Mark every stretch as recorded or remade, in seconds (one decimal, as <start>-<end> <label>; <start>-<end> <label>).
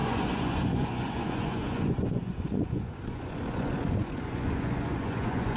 0.0-5.6 remade